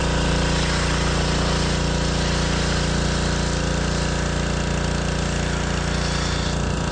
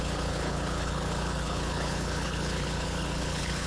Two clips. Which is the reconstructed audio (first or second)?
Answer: second